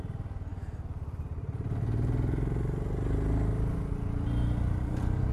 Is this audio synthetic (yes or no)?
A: no